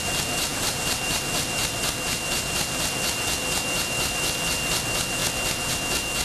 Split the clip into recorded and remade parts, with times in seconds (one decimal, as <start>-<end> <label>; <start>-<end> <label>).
0.0-0.5 recorded; 0.5-1.1 remade; 1.1-6.2 recorded